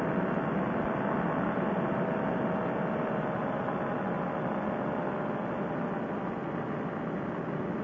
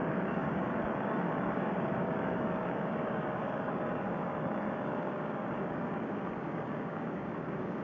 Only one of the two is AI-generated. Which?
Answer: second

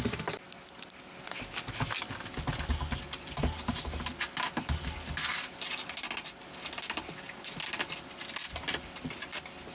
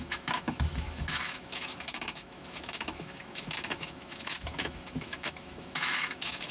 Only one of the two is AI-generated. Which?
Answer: second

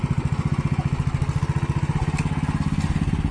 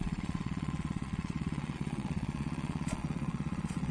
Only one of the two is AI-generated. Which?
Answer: second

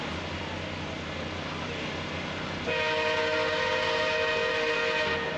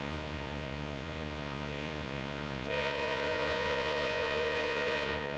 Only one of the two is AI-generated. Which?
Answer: second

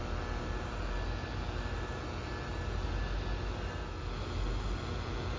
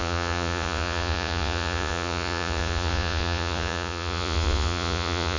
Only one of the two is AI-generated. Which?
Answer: second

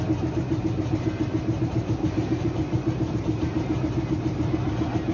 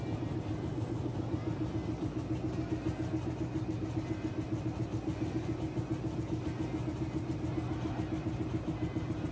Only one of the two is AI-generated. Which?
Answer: first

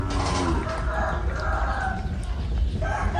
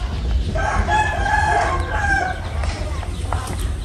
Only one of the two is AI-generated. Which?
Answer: second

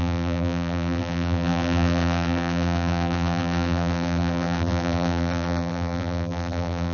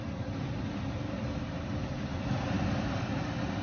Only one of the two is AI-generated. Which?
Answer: first